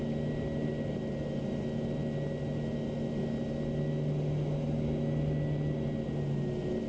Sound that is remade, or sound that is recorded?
recorded